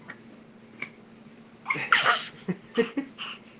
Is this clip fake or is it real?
real